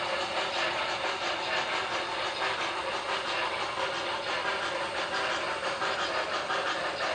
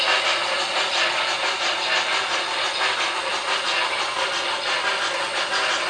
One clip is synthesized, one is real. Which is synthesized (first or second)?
first